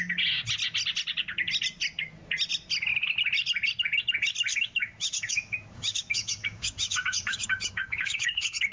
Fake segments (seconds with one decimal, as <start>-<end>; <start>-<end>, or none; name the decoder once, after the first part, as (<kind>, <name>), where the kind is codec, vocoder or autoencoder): 4.5-8.7 (autoencoder, DAC-VAE)